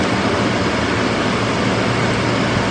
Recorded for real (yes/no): yes